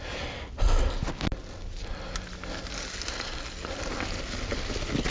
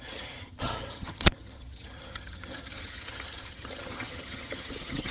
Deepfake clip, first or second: second